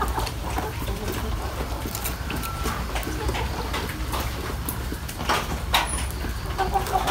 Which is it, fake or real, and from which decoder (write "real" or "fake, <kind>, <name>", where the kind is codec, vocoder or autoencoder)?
real